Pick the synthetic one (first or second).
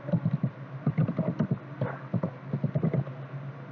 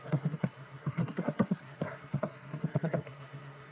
second